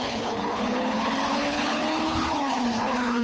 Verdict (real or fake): fake